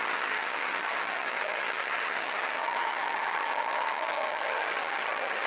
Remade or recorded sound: remade